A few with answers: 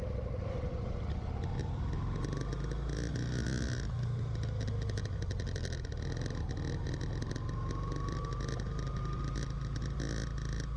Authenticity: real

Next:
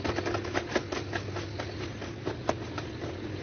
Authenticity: real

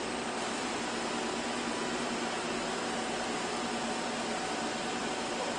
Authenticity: real